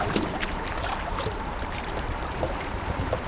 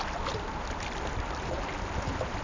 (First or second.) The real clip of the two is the second